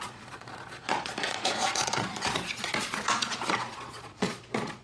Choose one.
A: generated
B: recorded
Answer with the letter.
A